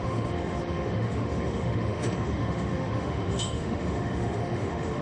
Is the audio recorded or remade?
remade